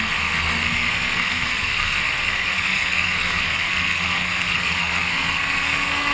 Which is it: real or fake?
fake